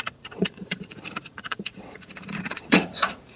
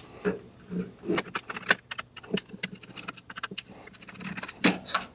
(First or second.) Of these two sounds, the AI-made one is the first